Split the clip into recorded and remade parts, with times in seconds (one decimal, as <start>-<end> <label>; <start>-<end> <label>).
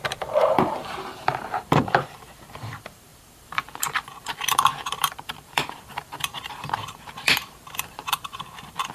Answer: 0.0-8.9 remade